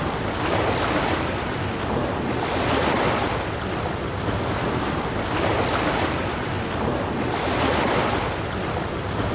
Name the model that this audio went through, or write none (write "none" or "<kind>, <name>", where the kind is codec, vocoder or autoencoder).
none